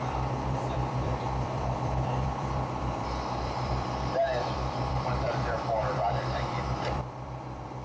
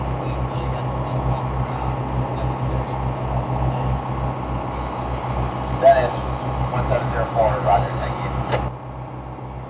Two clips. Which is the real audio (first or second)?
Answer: second